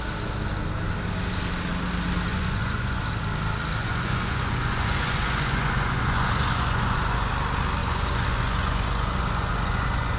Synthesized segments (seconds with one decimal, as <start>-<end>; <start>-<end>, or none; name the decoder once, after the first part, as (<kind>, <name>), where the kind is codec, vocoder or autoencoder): 2.3-3.0 (vocoder, Vocos); 3.8-7.3; 7.8-10.2